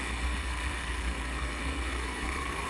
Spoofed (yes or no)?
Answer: yes